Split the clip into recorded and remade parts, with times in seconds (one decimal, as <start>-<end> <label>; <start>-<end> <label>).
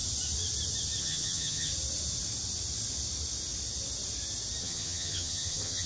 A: 0.0-1.0 recorded; 1.0-1.7 remade; 1.7-4.6 recorded; 4.6-5.9 remade